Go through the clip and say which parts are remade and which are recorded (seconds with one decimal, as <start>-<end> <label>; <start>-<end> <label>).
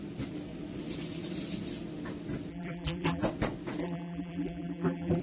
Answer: 0.0-2.5 recorded; 2.5-3.2 remade; 3.2-3.8 recorded; 3.8-5.2 remade